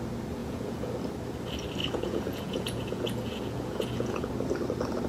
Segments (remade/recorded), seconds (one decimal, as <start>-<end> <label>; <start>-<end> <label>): 0.0-0.4 recorded; 0.4-0.9 remade; 0.9-1.8 recorded; 1.8-4.3 remade; 4.3-5.1 recorded